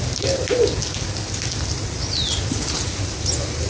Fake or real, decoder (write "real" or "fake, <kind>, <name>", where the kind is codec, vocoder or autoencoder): real